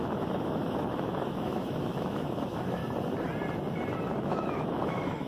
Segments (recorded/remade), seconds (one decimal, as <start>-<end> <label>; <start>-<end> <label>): 0.0-2.8 remade; 2.8-4.2 recorded; 4.2-5.3 remade